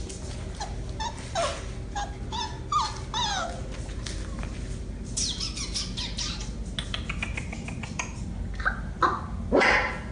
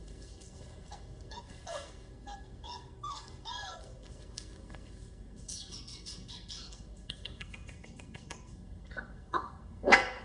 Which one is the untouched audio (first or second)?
first